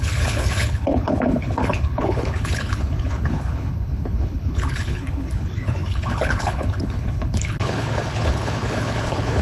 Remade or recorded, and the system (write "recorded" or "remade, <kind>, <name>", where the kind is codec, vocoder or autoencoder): remade, codec, HILCodec